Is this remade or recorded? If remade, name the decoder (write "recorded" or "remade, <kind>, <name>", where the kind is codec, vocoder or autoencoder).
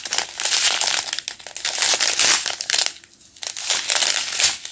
recorded